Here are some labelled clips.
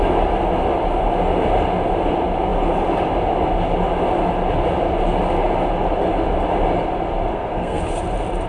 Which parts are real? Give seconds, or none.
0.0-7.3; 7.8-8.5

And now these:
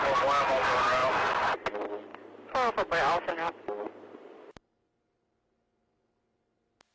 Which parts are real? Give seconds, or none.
0.0-1.0; 1.6-6.9